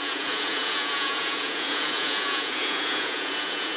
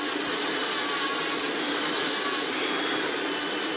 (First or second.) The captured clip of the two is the second